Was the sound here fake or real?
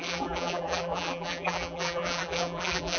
fake